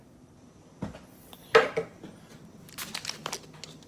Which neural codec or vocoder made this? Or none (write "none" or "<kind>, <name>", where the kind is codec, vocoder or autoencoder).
none